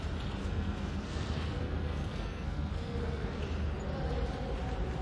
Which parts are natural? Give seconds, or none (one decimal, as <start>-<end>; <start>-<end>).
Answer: 0.0-0.4; 3.4-5.0